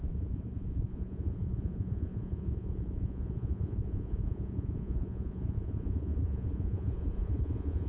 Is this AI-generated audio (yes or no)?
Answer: yes